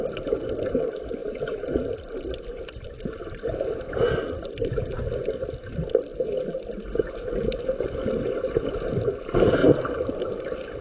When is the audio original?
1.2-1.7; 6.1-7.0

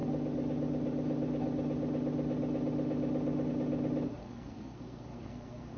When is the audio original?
0.0-4.2

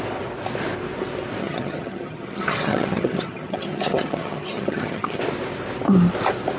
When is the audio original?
0.0-1.4; 5.2-6.6

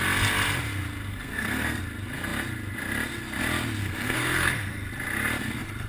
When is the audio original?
0.0-1.0; 1.8-3.8; 4.9-5.9

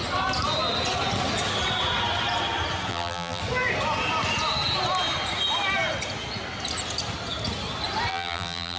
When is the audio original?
0.0-2.9; 3.4-8.1

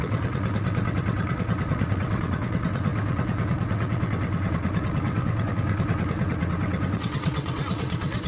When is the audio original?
none

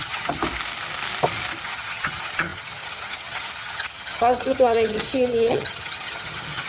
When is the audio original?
0.4-1.6